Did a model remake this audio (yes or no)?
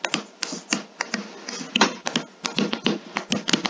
no